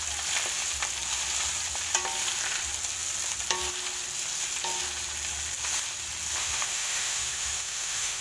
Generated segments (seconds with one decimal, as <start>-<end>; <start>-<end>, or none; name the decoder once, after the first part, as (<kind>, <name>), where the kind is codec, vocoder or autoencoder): 6.4-8.2 (autoencoder, DAC-VAE)